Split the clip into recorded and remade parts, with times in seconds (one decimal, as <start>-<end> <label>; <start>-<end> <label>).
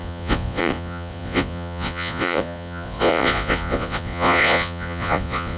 0.0-5.6 remade